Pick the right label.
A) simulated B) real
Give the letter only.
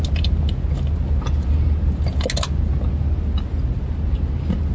B